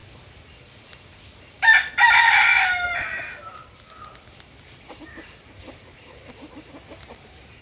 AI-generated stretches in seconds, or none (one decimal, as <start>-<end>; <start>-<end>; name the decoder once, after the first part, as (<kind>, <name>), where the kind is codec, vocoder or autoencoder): 4.6-7.6 (vocoder, BigVGAN v2)